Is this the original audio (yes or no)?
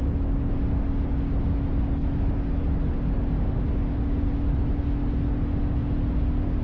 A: yes